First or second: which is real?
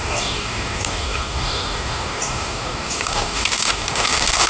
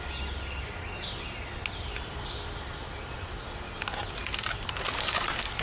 second